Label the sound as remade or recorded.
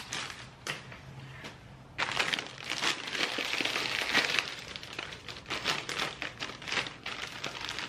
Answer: remade